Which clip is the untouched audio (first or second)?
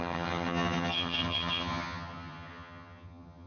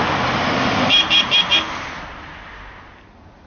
second